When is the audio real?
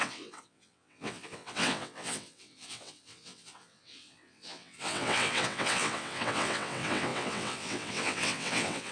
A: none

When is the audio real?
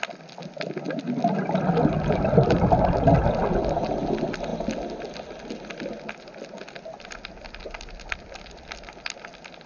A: 0.0-9.7